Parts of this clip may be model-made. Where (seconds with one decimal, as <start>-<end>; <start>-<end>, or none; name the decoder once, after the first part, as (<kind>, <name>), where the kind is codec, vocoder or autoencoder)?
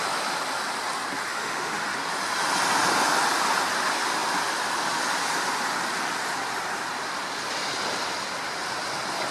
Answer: 1.3-1.9 (autoencoder, DAC-VAE)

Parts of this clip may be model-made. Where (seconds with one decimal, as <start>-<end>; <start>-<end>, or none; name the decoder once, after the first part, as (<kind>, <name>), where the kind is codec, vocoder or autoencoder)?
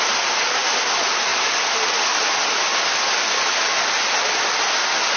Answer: none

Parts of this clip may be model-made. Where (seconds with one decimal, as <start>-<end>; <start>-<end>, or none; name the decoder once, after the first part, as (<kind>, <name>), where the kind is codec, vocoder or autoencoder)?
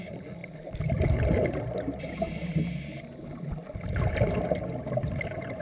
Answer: none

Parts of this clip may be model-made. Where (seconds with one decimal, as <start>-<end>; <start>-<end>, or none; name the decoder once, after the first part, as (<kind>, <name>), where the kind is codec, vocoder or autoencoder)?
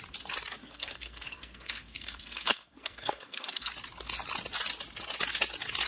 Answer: 0.6-3.7 (codec, SNAC)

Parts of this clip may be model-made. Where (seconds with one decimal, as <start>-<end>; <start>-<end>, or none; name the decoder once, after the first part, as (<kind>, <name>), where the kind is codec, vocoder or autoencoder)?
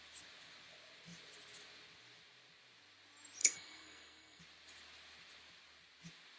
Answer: 3.4-4.4 (codec, SNAC)